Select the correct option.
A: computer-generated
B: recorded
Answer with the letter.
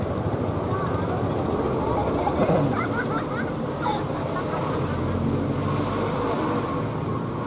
B